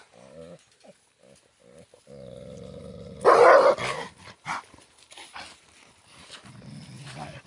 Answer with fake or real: real